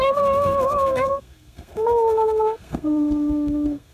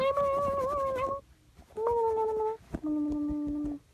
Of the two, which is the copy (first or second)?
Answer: first